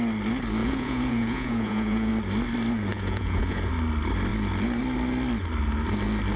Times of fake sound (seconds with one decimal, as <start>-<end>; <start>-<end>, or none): 0.6-2.1; 2.9-3.7